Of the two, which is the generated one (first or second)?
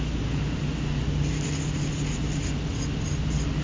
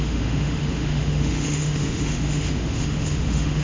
second